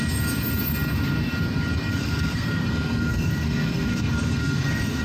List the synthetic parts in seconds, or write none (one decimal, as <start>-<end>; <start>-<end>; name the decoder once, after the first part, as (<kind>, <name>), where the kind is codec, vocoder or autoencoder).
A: 1.9-5.0 (codec, SNAC)